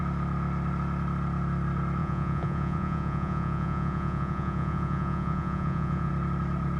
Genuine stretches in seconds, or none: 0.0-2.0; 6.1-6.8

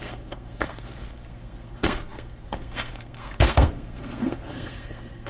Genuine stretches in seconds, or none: none

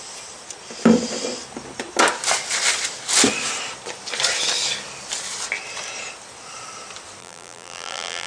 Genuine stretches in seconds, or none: 0.0-7.2